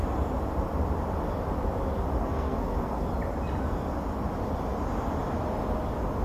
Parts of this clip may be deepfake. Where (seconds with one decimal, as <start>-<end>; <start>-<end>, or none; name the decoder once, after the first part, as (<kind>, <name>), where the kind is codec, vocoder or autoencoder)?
2.2-3.0 (codec, SNAC)

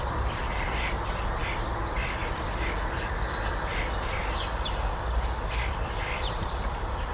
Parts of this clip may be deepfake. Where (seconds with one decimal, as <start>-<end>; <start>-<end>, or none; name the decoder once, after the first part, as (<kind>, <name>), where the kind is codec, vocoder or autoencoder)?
none

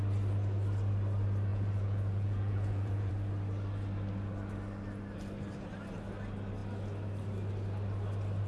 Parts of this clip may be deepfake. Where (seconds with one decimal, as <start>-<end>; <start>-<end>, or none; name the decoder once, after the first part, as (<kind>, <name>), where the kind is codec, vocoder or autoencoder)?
1.5-3.1 (vocoder, Vocos)

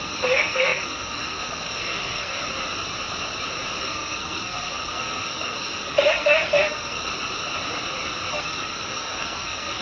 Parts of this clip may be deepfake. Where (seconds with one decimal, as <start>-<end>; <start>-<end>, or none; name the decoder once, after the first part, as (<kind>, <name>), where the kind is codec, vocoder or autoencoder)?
0.0-2.4 (codec, SNAC); 3.8-7.1; 8.3-9.8

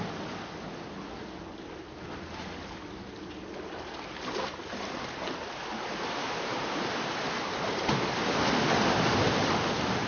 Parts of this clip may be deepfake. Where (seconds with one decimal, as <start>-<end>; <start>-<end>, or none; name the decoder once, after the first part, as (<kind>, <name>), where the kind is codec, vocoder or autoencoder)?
none

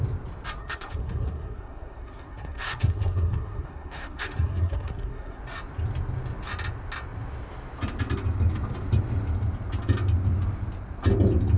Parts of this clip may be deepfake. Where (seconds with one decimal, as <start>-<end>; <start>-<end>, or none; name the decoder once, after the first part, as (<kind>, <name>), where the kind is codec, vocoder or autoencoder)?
0.6-5.4 (codec, SNAC)

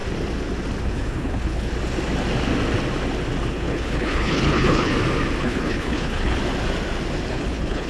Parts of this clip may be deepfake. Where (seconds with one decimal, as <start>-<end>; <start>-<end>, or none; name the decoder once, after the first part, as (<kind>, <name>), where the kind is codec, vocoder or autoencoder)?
0.8-1.7 (codec, HILCodec); 3.5-4.9; 5.4-6.4; 7.3-7.9

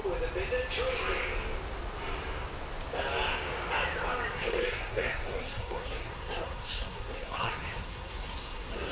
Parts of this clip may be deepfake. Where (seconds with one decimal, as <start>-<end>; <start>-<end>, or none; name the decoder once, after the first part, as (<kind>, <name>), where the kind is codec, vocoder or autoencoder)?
4.3-8.9 (codec, SNAC)